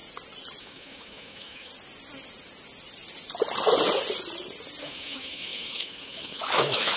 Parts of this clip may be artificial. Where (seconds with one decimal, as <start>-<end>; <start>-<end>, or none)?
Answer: 0.6-1.7; 4.8-7.0